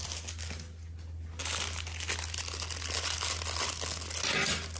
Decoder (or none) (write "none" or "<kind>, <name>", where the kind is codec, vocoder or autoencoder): none